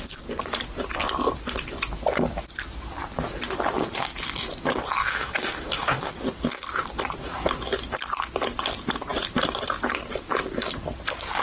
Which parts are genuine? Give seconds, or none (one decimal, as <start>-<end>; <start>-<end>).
0.0-5.0; 6.1-11.4

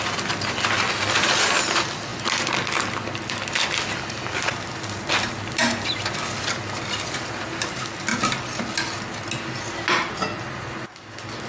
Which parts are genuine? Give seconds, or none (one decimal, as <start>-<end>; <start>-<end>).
0.0-8.1; 8.6-11.5